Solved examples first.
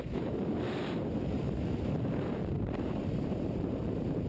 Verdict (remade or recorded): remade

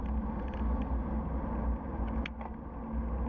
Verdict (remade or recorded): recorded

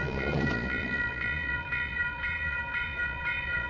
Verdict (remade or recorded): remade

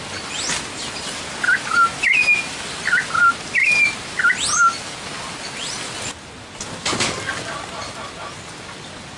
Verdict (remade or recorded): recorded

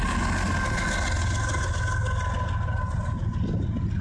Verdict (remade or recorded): recorded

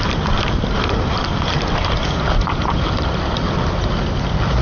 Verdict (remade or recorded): recorded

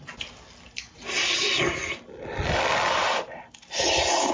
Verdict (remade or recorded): recorded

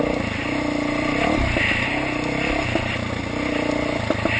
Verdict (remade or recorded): recorded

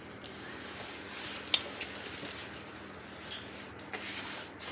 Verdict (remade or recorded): recorded